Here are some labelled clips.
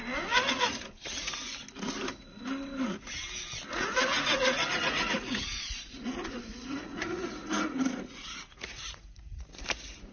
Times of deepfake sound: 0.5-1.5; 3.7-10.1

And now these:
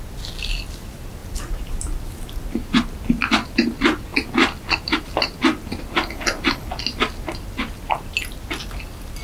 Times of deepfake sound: none

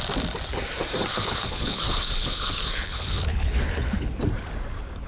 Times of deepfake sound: 1.1-4.2